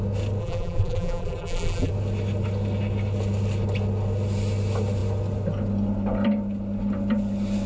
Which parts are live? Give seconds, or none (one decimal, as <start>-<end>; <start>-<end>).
0.0-0.4; 1.9-7.7